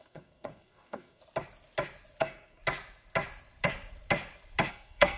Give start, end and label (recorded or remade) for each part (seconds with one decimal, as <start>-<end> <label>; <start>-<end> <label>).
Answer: 0.0-1.2 remade; 1.2-2.2 recorded; 2.2-2.6 remade; 2.6-4.7 recorded; 4.7-5.2 remade